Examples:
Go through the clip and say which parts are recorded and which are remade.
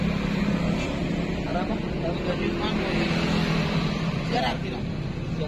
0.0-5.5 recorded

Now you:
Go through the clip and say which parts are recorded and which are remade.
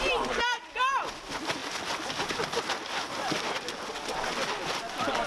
0.0-5.3 recorded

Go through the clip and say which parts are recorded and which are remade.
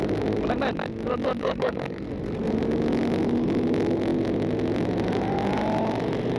0.0-1.4 recorded; 1.4-2.5 remade; 2.5-6.4 recorded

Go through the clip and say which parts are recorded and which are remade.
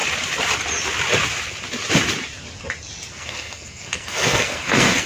0.0-3.1 recorded; 3.1-5.1 remade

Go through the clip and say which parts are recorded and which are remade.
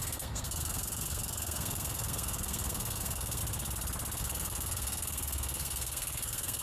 0.0-3.4 remade; 3.4-4.2 recorded; 4.2-6.6 remade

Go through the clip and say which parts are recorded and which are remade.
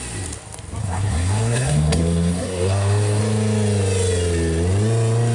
0.0-0.8 recorded; 0.8-3.2 remade; 3.2-5.3 recorded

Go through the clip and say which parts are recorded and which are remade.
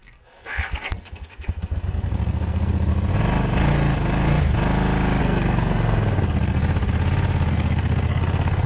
0.0-2.9 remade; 2.9-5.2 recorded; 5.2-6.6 remade; 6.6-7.5 recorded; 7.5-8.7 remade